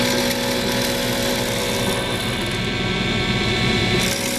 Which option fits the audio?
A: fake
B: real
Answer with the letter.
B